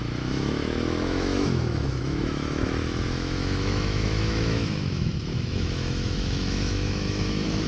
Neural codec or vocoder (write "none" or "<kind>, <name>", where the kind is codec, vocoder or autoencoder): autoencoder, DAC-VAE